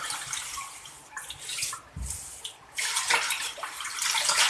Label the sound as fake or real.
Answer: fake